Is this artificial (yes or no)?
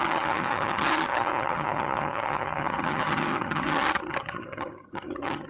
yes